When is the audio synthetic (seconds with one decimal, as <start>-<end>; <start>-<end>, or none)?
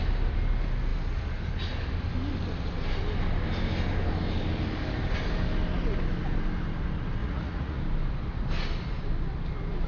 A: 7.2-7.8